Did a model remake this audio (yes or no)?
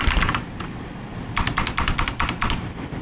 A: yes